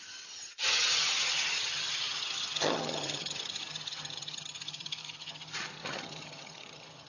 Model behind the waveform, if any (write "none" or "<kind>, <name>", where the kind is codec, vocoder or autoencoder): vocoder, HiFi-GAN